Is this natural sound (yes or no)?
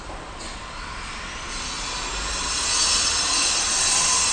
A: yes